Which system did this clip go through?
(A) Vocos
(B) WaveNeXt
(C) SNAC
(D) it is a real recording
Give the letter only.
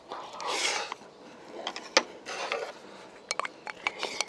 D